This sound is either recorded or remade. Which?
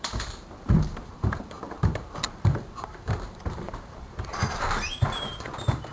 remade